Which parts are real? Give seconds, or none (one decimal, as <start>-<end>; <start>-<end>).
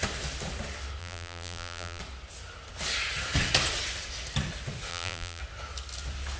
0.0-1.0; 2.0-4.9; 5.4-6.4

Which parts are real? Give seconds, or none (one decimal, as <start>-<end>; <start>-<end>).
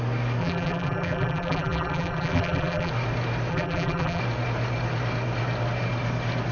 0.0-0.4; 2.9-3.5; 4.2-6.5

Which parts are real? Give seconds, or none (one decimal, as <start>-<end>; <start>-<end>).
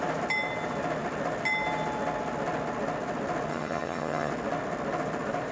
0.0-3.5; 4.3-5.5